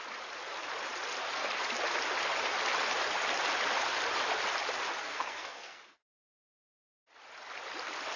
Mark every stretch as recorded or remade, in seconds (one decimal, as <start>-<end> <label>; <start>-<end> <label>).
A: 0.0-5.0 recorded; 5.0-6.3 remade; 6.3-8.2 recorded